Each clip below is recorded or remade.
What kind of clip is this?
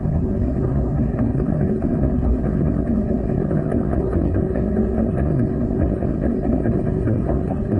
remade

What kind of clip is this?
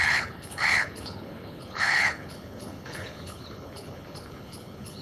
remade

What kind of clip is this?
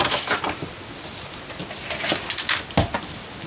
recorded